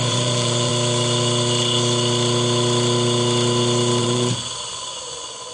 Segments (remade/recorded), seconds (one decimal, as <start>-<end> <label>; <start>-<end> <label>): 0.0-0.7 remade; 0.7-4.0 recorded; 4.0-5.5 remade

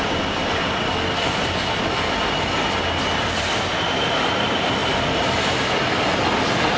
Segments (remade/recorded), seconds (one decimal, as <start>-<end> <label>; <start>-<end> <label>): 0.0-6.8 recorded